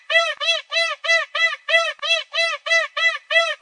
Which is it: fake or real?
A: fake